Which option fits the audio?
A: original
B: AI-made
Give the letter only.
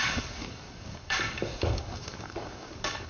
B